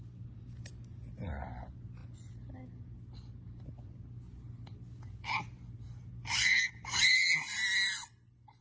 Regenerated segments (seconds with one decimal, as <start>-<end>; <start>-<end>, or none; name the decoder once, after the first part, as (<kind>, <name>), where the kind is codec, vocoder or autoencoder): none